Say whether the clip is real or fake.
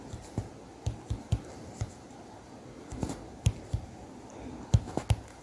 real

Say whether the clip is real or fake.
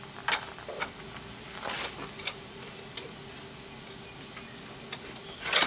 real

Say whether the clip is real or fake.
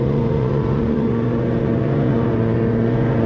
fake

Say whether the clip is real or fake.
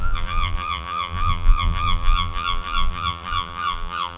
fake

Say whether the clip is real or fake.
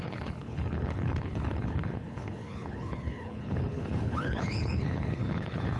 fake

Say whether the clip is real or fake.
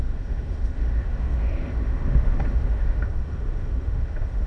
fake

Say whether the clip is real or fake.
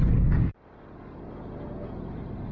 real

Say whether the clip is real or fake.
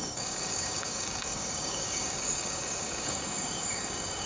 fake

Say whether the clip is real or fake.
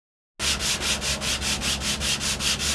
real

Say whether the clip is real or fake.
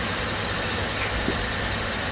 real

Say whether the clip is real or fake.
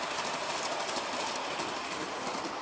real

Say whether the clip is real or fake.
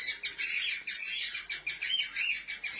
real